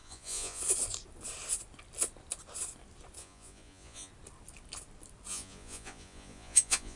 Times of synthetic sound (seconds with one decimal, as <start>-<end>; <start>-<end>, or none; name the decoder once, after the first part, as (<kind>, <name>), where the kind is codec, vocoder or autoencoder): 0.0-0.6 (vocoder, Vocos); 3.2-4.1; 5.3-7.0